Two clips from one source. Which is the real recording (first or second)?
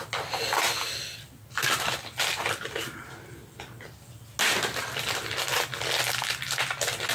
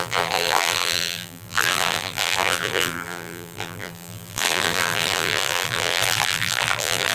first